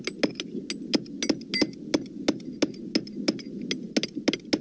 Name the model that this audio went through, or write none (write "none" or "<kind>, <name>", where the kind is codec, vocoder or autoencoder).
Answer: none